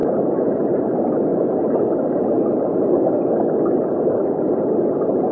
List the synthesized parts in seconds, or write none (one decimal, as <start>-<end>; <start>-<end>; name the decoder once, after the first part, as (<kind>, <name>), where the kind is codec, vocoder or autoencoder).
0.7-1.3 (vocoder, BigVGAN v2); 4.0-5.3